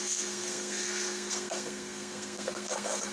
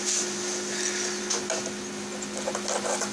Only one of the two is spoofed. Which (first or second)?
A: first